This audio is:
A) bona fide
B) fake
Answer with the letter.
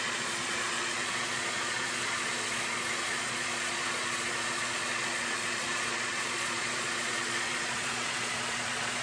B